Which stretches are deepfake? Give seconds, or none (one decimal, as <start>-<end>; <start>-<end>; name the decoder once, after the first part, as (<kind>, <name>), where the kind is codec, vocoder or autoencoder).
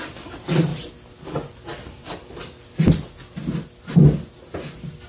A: none